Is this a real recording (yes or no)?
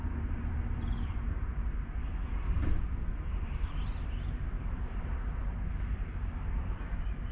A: yes